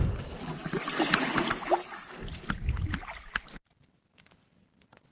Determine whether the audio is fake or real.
real